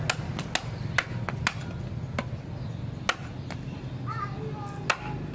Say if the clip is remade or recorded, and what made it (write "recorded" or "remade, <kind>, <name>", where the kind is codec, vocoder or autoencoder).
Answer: recorded